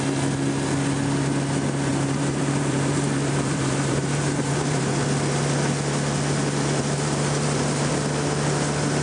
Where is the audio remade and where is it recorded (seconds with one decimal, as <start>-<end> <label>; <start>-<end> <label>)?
0.0-1.9 recorded; 1.9-4.9 remade; 4.9-6.8 recorded; 6.8-7.9 remade; 7.9-9.0 recorded